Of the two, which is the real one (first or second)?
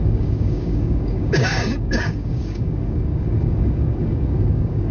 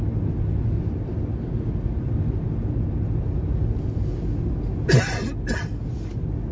second